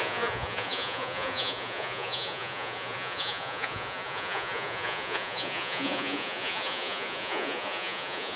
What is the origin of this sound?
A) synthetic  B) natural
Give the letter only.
A